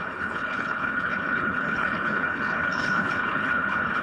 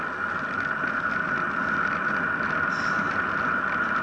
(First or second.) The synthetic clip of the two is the first